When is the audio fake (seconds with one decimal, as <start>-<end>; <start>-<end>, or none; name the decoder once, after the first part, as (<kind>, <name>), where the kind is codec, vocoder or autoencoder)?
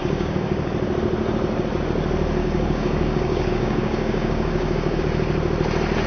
0.0-0.7 (codec, DAC); 2.4-5.0